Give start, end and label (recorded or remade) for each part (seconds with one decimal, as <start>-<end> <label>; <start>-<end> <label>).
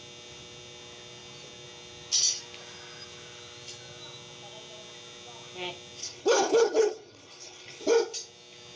0.0-6.0 recorded; 6.0-7.8 remade; 7.8-8.8 recorded